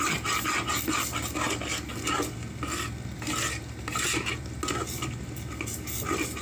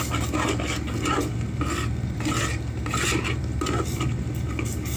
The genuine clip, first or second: first